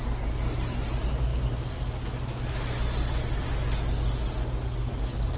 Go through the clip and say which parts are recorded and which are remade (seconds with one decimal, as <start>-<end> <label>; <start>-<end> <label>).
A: 0.0-5.4 recorded